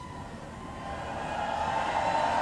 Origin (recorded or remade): recorded